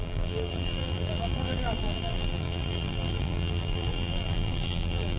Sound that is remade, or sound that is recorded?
remade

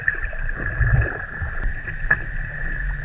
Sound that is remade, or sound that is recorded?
recorded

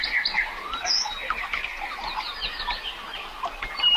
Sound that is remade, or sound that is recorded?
recorded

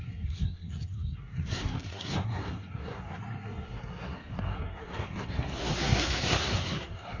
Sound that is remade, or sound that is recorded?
remade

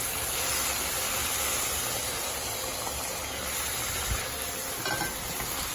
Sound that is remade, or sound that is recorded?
recorded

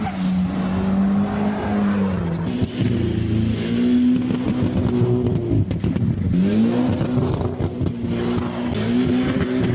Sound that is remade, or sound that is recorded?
recorded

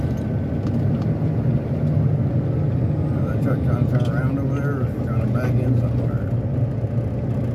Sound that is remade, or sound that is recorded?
recorded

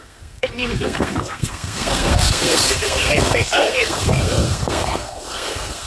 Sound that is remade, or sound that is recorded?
remade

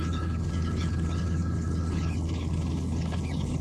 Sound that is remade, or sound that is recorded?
remade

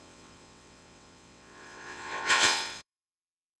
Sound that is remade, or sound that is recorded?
remade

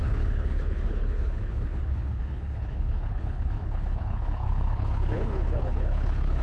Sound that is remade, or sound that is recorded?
remade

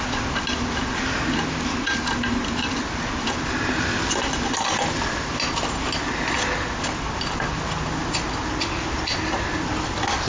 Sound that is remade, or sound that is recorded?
recorded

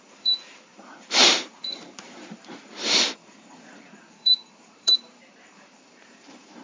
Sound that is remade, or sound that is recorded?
remade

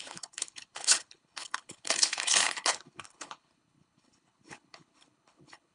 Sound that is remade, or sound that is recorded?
remade